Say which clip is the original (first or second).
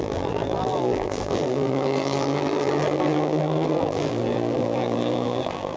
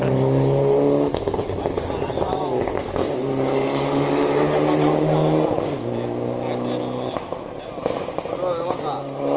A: second